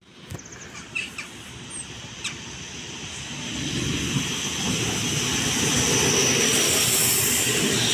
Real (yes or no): yes